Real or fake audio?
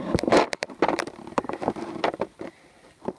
fake